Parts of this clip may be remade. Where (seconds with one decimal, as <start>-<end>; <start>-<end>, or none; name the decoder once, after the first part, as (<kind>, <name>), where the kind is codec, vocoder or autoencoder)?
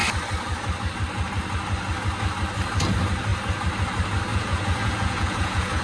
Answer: 4.3-5.8 (vocoder, Vocos)